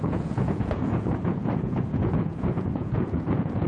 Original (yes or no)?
no